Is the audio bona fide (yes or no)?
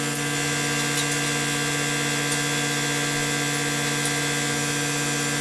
yes